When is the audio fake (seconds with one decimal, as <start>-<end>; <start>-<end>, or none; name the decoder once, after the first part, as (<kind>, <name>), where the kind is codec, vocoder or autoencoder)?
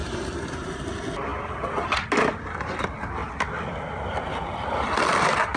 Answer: 0.0-0.8 (vocoder, BigVGAN v2)